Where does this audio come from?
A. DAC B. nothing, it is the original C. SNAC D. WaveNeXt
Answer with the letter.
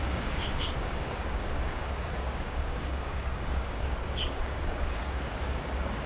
A